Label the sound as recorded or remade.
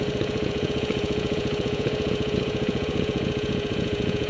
remade